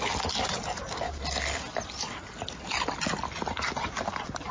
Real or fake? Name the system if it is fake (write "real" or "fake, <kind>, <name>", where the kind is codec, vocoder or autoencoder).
real